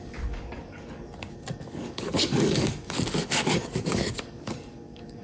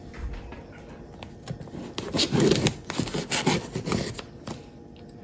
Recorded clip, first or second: second